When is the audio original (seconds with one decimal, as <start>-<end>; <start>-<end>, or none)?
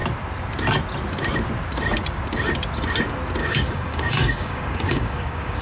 0.0-3.4